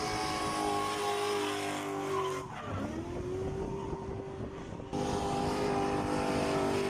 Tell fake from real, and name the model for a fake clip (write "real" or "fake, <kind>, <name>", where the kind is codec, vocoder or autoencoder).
real